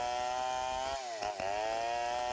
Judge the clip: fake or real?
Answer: real